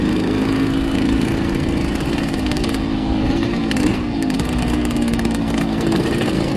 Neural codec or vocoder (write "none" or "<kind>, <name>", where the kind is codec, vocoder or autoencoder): codec, SNAC